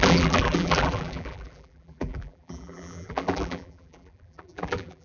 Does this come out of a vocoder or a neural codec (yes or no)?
yes